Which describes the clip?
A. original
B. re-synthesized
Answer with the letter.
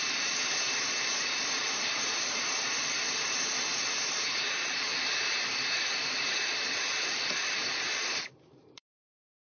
B